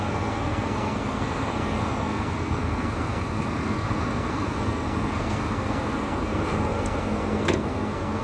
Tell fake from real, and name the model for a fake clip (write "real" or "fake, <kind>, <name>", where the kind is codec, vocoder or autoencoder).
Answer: fake, codec, SNAC